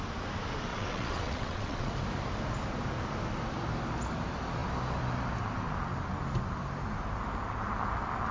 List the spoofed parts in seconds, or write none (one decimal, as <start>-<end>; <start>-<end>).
0.7-1.9